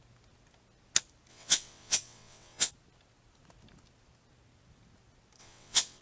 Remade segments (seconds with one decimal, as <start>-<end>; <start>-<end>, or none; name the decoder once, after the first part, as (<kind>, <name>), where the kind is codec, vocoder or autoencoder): 1.3-2.7 (vocoder, WaveNeXt); 5.4-6.0